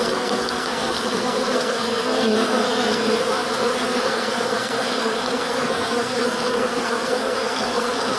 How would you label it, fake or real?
fake